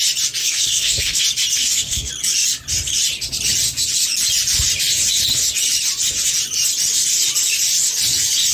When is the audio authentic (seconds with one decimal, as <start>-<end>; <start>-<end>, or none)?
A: 0.0-0.4; 1.2-1.6; 2.1-8.5